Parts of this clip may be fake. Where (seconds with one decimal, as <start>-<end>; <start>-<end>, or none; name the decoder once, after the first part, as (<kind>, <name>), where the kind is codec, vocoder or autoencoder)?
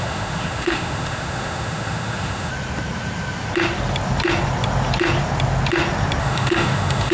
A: 0.0-2.5 (autoencoder, DAC-VAE); 6.2-7.1